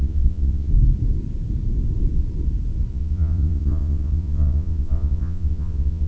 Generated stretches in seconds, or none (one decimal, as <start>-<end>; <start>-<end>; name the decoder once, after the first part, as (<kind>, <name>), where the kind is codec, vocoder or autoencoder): 0.0-0.7 (vocoder, Vocos); 2.9-6.1